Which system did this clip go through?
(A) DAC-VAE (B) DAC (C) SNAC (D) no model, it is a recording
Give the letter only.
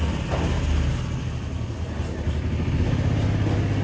D